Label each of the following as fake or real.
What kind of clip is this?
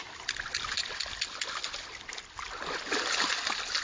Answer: real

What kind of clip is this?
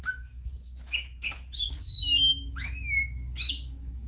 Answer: fake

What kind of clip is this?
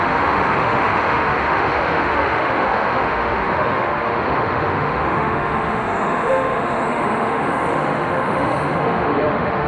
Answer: fake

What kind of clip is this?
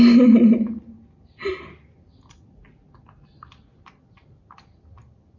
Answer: real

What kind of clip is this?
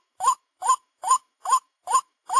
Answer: fake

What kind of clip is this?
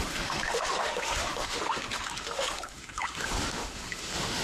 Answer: fake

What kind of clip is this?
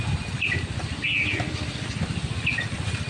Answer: real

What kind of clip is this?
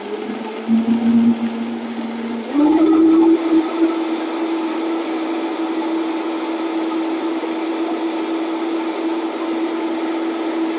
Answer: real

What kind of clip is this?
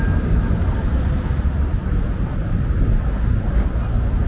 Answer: real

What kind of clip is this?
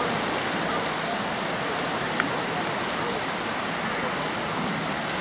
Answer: real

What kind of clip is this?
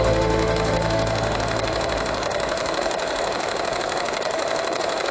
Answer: fake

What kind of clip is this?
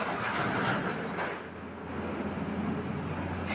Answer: real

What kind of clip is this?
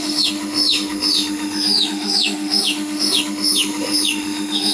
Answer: fake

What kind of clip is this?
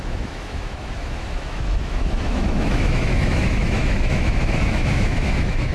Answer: fake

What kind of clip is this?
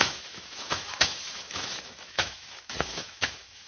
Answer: fake